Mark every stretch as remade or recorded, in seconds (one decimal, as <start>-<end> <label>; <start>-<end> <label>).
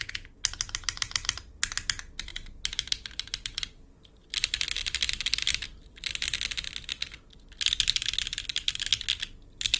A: 0.0-9.8 recorded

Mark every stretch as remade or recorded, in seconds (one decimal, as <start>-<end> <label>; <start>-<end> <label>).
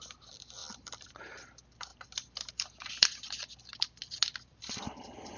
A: 0.0-1.9 remade; 1.9-2.5 recorded; 2.5-4.0 remade; 4.0-4.5 recorded; 4.5-5.4 remade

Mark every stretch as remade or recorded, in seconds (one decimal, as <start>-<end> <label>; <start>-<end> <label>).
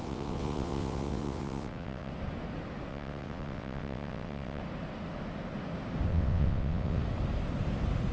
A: 0.0-2.1 remade; 2.1-2.9 recorded; 2.9-4.6 remade; 4.6-6.1 recorded; 6.1-7.0 remade; 7.0-8.1 recorded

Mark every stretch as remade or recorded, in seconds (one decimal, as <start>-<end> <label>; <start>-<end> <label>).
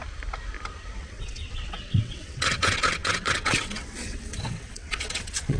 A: 0.0-1.0 recorded; 1.0-5.6 remade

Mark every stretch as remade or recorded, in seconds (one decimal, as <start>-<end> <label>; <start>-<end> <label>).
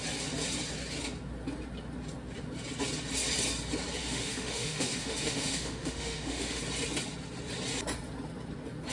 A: 0.0-4.0 recorded; 4.0-6.6 remade; 6.6-8.9 recorded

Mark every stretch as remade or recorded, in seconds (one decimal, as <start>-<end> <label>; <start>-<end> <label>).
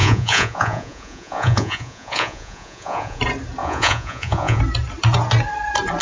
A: 0.0-3.2 remade; 3.2-3.6 recorded; 3.6-4.6 remade; 4.6-6.0 recorded